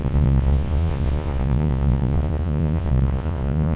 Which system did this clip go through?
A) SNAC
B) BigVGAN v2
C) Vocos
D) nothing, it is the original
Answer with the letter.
C